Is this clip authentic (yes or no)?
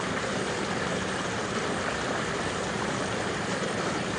yes